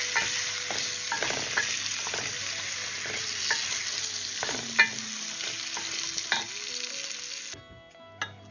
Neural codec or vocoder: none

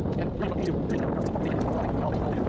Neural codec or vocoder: none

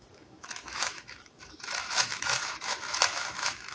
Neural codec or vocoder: autoencoder, DAC-VAE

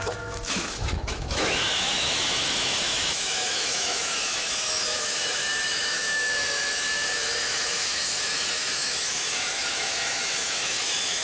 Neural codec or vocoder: autoencoder, DAC-VAE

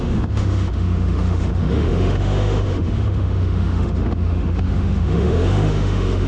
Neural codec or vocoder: autoencoder, DAC-VAE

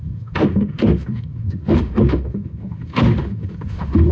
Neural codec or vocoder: autoencoder, DAC-VAE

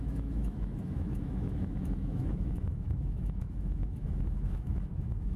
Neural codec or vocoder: autoencoder, DAC-VAE